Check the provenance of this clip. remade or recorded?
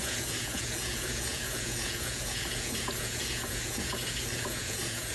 remade